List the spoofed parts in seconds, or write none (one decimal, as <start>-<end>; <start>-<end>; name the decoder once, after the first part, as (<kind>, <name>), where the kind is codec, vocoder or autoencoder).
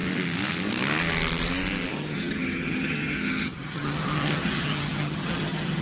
1.9-5.8 (vocoder, HiFi-GAN)